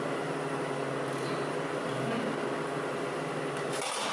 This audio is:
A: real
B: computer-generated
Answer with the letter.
A